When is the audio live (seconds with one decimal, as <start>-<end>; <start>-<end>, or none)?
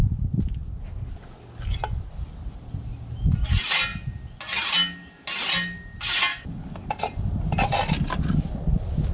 0.0-6.3; 6.9-9.1